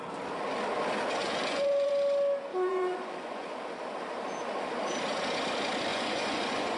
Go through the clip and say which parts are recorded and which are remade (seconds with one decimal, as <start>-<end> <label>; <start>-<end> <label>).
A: 0.0-1.2 recorded; 1.2-1.9 remade; 1.9-2.5 recorded; 2.5-3.5 remade; 3.5-5.9 recorded; 5.9-6.8 remade